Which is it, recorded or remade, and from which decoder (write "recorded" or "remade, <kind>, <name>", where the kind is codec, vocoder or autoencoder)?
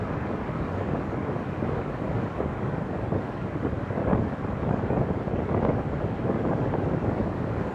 remade, codec, DAC